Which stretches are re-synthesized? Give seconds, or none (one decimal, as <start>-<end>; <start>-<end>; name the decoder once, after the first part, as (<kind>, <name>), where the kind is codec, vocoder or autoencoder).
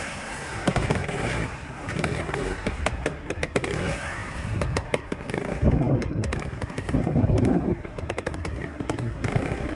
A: 0.0-9.8 (codec, SNAC)